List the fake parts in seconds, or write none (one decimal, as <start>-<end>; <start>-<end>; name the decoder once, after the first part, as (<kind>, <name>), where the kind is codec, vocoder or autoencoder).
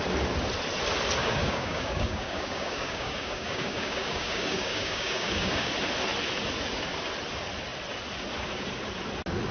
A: 1.2-5.7 (codec, DAC)